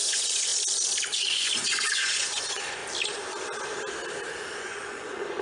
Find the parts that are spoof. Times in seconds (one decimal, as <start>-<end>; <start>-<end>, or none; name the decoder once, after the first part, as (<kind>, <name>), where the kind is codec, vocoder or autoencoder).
0.0-0.5 (vocoder, Vocos); 1.2-2.8; 4.6-5.4